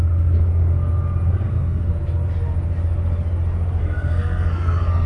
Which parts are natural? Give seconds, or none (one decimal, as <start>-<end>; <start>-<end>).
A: 0.0-1.3; 1.9-3.8